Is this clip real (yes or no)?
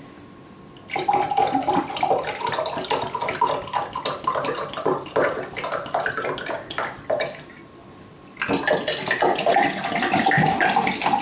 yes